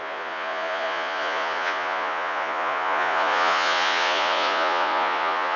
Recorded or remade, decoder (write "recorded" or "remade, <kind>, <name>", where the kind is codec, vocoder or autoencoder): remade, vocoder, Vocos